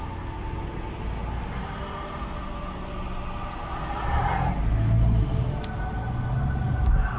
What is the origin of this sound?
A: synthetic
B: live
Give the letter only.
B